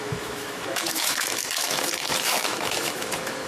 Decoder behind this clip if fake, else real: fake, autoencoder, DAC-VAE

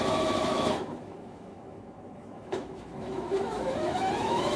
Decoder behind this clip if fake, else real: fake, autoencoder, DAC-VAE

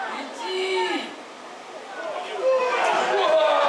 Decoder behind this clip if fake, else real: real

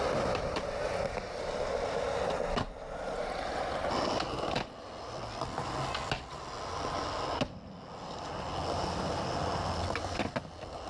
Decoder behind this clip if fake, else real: real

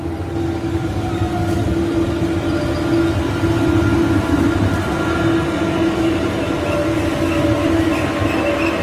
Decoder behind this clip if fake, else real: real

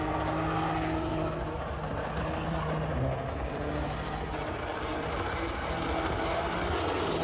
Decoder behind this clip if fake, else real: real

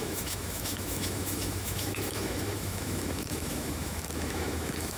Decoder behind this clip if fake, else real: fake, autoencoder, DAC-VAE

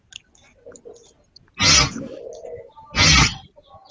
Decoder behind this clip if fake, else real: real